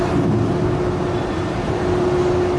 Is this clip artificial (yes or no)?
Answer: no